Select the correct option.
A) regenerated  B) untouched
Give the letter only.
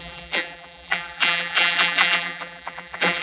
A